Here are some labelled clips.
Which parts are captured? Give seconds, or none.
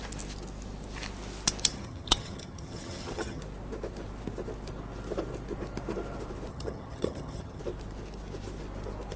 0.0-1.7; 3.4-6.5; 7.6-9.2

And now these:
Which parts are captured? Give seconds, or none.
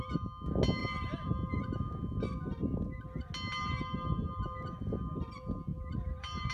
0.0-0.8; 1.7-5.7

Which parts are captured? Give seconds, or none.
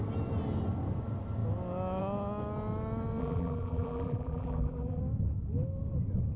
0.0-3.2; 5.0-6.4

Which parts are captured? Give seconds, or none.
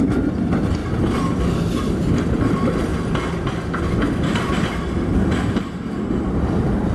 0.0-6.9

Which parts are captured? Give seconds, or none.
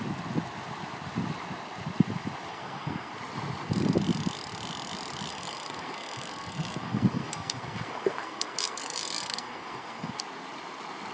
0.0-2.5; 3.1-5.3; 10.2-11.1